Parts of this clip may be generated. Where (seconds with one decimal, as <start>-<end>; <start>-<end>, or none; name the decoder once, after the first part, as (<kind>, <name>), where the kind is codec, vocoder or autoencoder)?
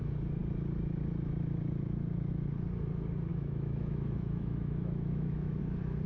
3.3-5.6 (autoencoder, DAC-VAE)